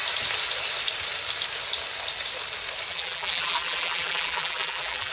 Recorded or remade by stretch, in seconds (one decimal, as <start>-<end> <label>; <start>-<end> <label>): 0.0-2.9 recorded; 2.9-5.1 remade